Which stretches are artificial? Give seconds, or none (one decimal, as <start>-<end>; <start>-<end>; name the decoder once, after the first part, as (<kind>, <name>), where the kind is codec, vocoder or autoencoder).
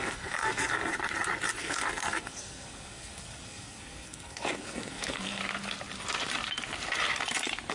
0.0-0.9 (codec, SNAC); 1.6-5.4